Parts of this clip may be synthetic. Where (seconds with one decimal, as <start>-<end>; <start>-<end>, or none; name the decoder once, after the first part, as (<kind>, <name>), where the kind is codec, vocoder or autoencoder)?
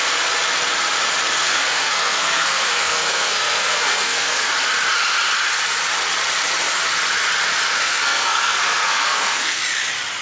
1.4-4.5 (codec, SNAC); 7.8-9.6